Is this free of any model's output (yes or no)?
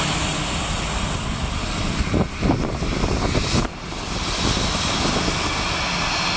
yes